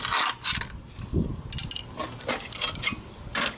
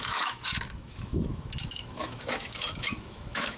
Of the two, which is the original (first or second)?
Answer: first